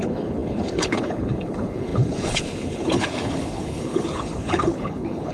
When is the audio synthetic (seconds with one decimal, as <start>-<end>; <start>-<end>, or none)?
0.0-5.3